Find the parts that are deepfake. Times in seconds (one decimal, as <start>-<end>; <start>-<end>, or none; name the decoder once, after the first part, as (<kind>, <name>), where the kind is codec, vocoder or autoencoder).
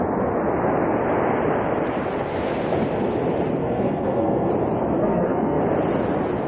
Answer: 3.6-4.5 (codec, SNAC); 5.0-5.6